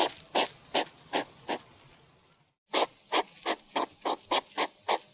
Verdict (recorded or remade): recorded